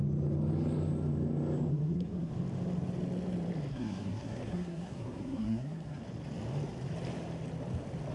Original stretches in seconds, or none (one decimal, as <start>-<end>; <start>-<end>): 0.0-1.7; 2.3-3.7; 6.0-8.1